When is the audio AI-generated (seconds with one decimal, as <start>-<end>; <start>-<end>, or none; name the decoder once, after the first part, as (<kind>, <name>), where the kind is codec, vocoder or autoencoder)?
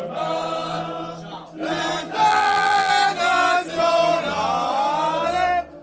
2.3-2.9 (vocoder, BigVGAN v2)